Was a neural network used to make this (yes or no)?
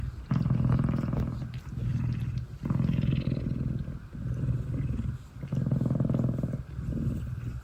no